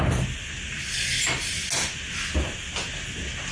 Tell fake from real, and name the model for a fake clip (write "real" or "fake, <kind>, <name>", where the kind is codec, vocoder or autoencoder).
real